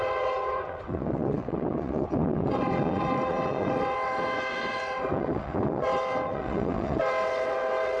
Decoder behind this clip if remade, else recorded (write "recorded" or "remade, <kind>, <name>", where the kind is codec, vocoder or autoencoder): remade, vocoder, WaveNeXt